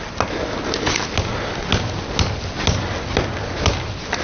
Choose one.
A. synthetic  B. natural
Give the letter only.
B